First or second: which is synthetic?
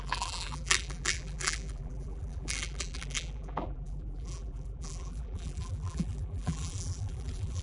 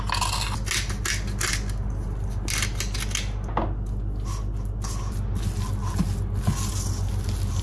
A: first